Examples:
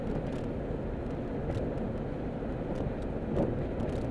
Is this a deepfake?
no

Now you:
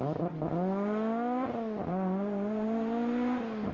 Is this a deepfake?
no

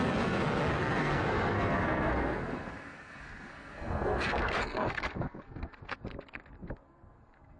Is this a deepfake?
yes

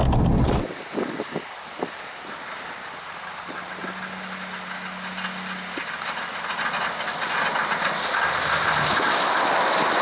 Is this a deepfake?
no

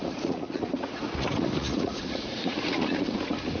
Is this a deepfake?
yes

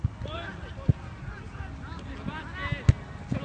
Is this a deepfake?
no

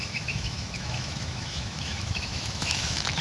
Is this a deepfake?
yes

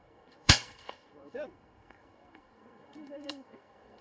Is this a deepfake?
yes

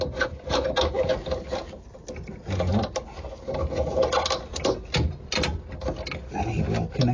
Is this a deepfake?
no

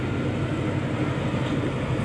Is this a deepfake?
no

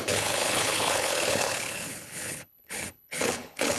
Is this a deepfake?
yes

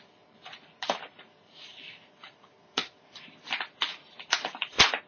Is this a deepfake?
yes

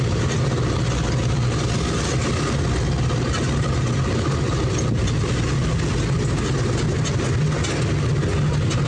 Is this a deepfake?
no